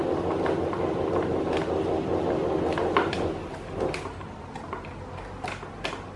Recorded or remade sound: recorded